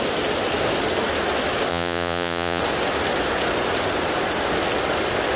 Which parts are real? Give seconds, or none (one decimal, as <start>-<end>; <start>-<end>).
0.0-1.7; 2.6-5.4